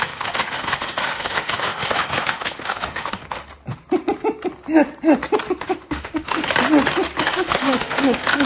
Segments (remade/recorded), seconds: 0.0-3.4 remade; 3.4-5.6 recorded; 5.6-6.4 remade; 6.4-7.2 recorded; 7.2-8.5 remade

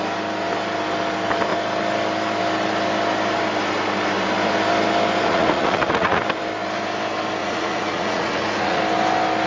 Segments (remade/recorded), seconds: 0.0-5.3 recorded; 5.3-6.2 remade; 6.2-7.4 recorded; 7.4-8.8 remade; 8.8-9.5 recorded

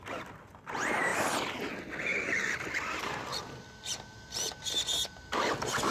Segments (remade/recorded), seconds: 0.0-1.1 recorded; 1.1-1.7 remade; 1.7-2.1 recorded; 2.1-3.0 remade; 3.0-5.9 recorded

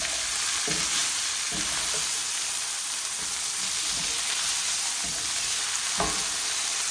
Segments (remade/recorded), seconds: 0.0-1.0 recorded; 1.0-1.6 remade; 1.6-2.2 recorded; 2.2-5.6 remade; 5.6-6.9 recorded